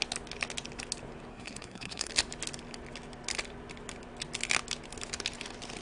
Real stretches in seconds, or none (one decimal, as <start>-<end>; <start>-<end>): 0.0-1.3; 2.1-5.8